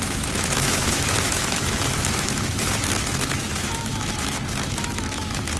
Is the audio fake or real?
fake